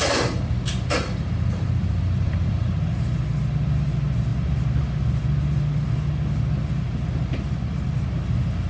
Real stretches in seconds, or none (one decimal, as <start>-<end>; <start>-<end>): 2.7-8.7